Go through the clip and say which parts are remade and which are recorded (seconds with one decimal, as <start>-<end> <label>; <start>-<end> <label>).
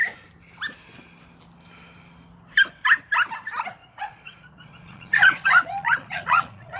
0.0-3.8 recorded; 3.8-6.8 remade